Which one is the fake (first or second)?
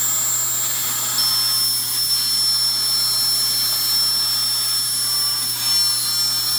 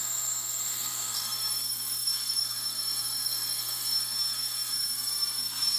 second